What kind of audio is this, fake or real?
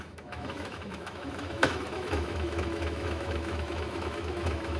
fake